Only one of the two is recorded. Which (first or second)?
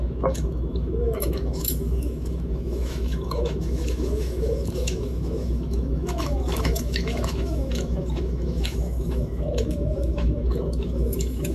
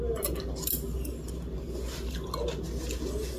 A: second